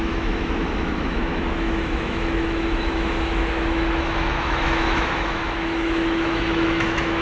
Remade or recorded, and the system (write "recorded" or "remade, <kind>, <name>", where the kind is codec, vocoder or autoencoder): remade, autoencoder, DAC-VAE